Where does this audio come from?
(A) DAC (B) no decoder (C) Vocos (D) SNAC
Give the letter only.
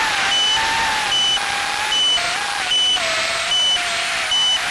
B